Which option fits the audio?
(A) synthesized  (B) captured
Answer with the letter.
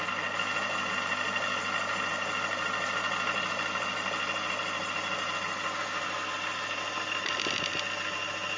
B